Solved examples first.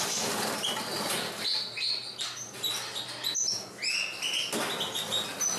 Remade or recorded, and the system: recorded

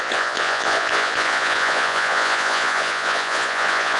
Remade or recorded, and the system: remade, vocoder, Vocos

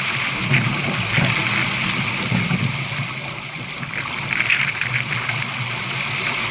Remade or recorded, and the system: recorded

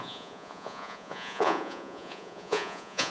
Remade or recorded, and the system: remade, vocoder, Vocos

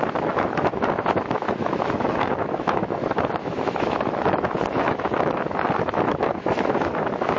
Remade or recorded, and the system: remade, autoencoder, DAC-VAE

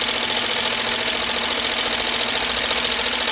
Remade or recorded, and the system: recorded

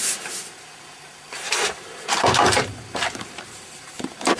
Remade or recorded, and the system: remade, vocoder, BigVGAN v2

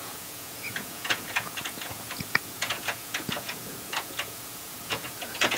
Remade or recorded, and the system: remade, vocoder, Vocos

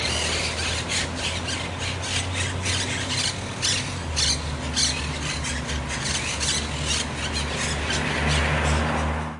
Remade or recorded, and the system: recorded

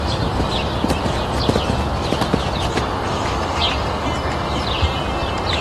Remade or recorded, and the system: recorded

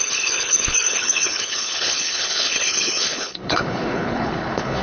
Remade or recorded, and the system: remade, codec, HILCodec